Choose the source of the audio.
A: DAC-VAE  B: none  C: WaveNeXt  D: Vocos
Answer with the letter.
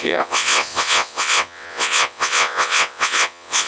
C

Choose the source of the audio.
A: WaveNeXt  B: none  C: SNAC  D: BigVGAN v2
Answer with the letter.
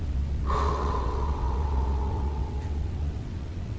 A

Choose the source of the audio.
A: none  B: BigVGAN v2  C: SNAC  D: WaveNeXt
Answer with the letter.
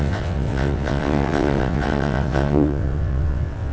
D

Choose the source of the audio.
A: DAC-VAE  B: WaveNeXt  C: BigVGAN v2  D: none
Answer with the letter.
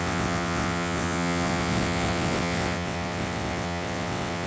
B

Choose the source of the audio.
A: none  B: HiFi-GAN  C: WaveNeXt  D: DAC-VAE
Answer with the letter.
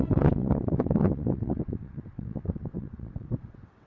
C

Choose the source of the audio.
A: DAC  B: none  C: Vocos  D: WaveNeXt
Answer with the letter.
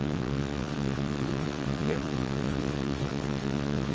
D